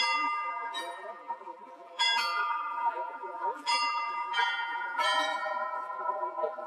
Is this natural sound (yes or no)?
no